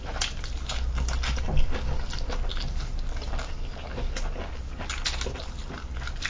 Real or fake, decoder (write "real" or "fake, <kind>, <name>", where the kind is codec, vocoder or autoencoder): real